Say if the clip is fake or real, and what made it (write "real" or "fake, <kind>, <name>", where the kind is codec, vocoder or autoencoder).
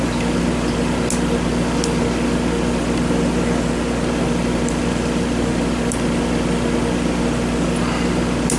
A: real